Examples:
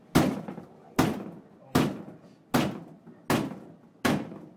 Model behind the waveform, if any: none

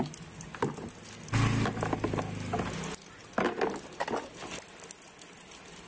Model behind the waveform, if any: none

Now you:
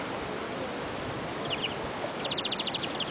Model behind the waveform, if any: none